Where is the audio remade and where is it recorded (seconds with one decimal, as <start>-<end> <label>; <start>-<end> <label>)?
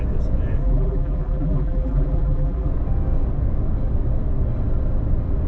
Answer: 0.0-0.6 recorded; 0.6-2.7 remade; 2.7-5.5 recorded